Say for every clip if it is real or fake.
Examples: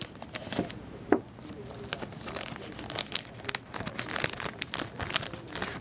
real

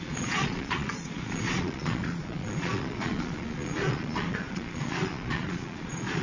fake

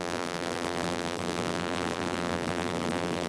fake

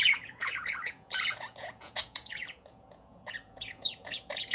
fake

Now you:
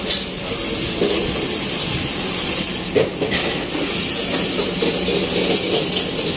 real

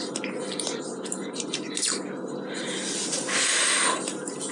real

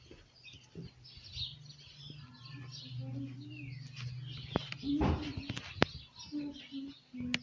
real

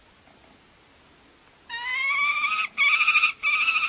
real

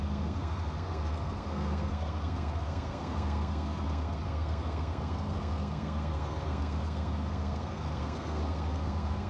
fake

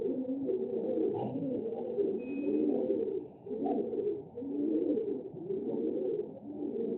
real